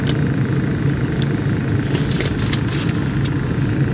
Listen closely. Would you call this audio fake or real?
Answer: real